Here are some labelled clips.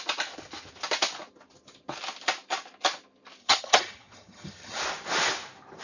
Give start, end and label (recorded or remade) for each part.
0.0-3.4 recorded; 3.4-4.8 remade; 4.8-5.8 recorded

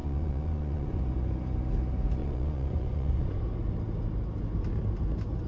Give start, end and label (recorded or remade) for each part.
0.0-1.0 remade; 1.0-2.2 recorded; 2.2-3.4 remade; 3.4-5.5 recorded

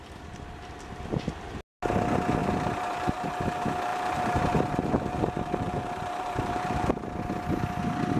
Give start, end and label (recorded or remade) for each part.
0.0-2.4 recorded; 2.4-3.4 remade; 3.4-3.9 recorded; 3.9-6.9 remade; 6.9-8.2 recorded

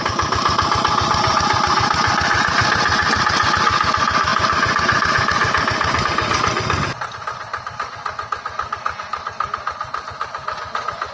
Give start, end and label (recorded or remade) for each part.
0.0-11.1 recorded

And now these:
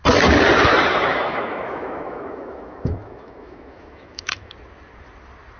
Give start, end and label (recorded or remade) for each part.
0.0-1.1 recorded; 1.1-4.5 remade; 4.5-5.6 recorded

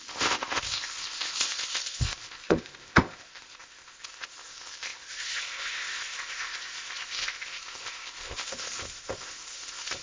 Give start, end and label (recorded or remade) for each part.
0.0-10.0 remade